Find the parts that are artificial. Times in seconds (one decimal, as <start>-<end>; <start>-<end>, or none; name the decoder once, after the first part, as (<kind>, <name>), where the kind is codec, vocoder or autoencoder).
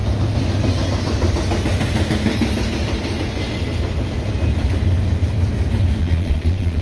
6.0-6.8 (vocoder, Vocos)